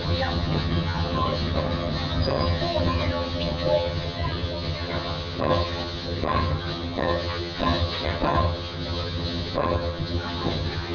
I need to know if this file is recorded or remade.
remade